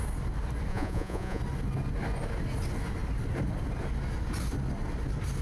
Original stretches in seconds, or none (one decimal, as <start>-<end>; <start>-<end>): 0.0-0.7; 1.4-5.4

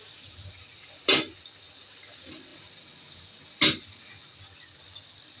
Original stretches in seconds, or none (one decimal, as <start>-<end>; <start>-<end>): 0.0-5.4

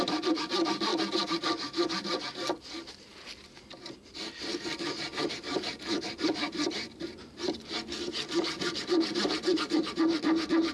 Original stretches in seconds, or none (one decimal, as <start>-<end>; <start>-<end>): 0.9-5.3

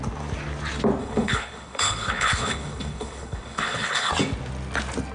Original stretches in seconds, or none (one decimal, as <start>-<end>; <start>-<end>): 0.0-1.0; 4.1-5.1

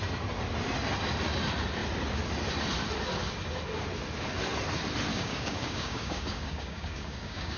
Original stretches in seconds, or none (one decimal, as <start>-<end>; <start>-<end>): 0.0-5.1